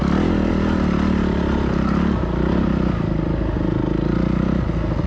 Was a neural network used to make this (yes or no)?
no